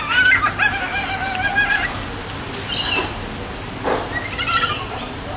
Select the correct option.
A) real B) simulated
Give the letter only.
A